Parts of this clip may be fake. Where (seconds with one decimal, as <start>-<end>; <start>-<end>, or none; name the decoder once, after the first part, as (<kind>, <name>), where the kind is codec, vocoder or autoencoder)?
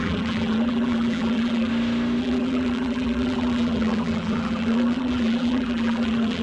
0.0-1.7 (vocoder, BigVGAN v2); 2.2-6.4